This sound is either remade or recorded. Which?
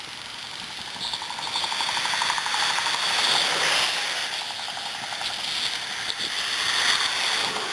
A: recorded